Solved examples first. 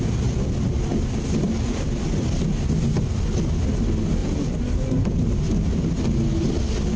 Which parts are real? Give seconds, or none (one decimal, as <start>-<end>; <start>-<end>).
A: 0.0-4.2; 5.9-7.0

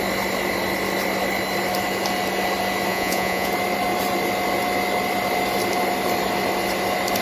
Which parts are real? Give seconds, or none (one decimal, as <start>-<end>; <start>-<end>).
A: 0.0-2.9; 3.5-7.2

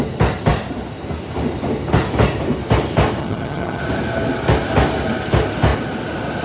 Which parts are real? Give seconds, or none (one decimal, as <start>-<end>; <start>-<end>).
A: 0.0-3.2; 3.8-6.4

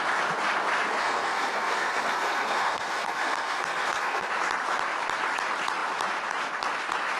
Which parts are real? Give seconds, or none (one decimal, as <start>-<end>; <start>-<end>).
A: 0.0-1.0; 4.3-7.2

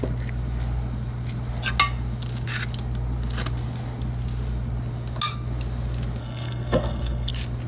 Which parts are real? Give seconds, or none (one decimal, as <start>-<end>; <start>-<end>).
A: 0.0-6.2; 7.3-7.7

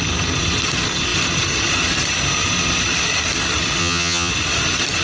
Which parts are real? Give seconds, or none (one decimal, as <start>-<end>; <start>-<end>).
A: 0.0-3.8; 4.3-5.0

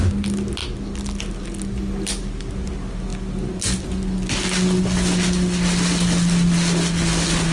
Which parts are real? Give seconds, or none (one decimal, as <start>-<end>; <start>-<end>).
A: 0.0-7.5

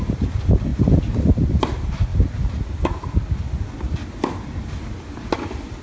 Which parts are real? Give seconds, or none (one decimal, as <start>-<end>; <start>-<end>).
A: 0.0-5.8